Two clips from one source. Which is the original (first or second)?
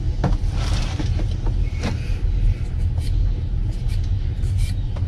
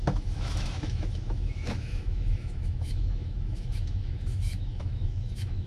first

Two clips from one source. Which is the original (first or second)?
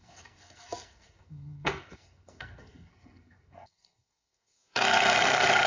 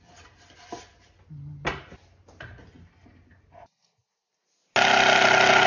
second